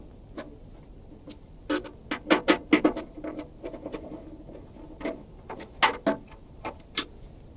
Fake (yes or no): no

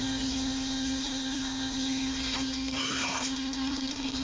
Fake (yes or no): yes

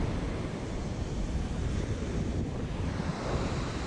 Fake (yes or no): no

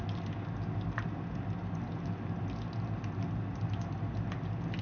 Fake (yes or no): no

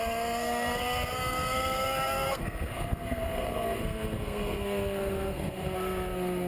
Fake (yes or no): yes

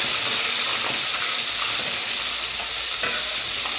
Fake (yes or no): no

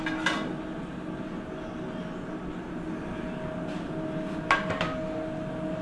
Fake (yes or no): no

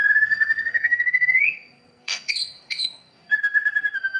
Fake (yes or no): yes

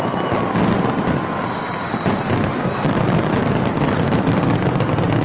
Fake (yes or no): no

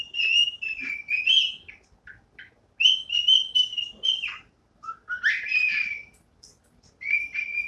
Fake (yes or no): no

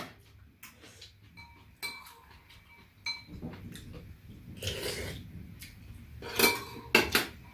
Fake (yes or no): no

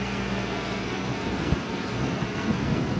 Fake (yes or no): yes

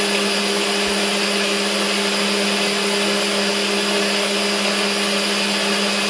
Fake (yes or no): no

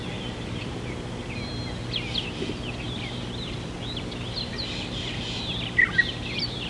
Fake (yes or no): no